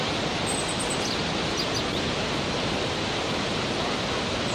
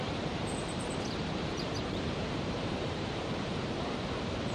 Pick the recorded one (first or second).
first